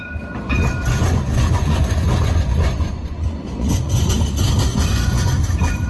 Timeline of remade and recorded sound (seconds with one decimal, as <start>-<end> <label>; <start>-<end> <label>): 0.0-0.6 recorded; 0.6-4.1 remade; 4.1-4.7 recorded; 4.7-5.3 remade; 5.3-5.9 recorded